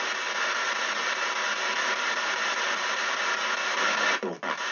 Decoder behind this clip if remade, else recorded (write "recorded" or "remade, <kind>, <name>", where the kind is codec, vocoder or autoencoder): recorded